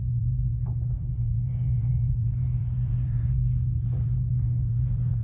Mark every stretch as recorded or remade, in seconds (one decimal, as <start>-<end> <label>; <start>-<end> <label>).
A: 0.0-0.5 remade; 0.5-1.2 recorded; 1.2-5.2 remade